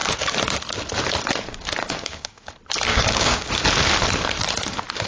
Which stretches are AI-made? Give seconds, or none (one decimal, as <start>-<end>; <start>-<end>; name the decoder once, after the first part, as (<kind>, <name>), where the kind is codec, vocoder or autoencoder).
1.8-2.5 (codec, DAC); 2.9-3.5